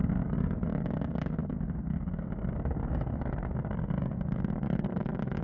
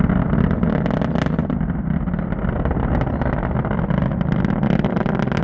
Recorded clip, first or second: second